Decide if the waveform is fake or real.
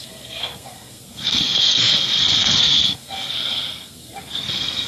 fake